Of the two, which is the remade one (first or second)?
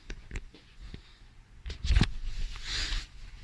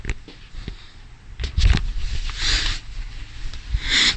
first